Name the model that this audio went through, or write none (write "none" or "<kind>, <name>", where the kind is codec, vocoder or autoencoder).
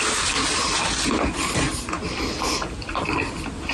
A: none